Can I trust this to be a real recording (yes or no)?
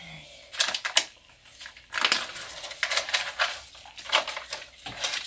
yes